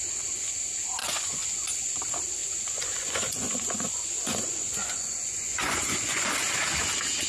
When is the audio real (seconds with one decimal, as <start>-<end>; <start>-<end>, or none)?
0.0-1.0; 2.0-2.4; 6.3-7.3